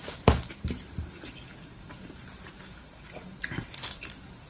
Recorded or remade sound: remade